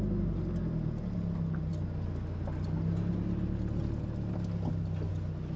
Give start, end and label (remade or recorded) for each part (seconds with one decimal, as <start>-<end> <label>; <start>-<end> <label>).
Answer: 0.0-5.6 recorded